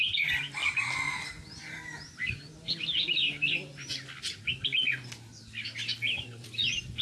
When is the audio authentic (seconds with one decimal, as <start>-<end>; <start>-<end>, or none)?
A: 0.6-2.3; 3.7-6.1

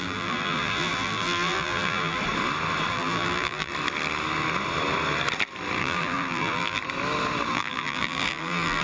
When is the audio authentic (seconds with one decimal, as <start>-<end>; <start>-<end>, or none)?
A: 2.2-2.9; 3.7-5.8; 6.8-7.5

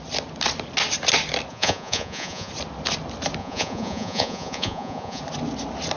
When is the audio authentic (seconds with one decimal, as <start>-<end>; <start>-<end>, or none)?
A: 0.0-1.5; 2.5-3.4; 5.2-6.0

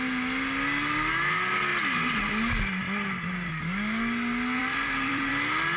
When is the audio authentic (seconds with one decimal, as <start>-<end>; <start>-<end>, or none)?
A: 0.0-4.6; 5.3-5.8

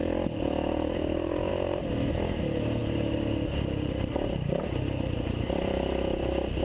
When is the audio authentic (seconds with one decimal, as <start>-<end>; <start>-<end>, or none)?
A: 0.0-6.6

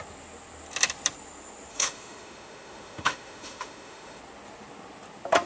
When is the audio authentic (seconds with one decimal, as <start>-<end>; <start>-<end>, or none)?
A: 0.0-1.7; 4.2-5.5

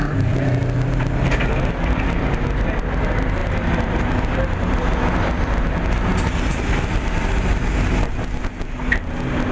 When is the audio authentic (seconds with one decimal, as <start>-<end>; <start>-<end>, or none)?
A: 0.0-9.5